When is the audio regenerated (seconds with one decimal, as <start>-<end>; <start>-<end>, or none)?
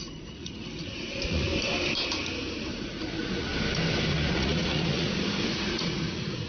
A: 0.0-1.5; 2.7-3.5; 4.1-6.5